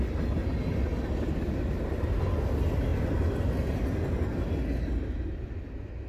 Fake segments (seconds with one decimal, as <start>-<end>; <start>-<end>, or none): none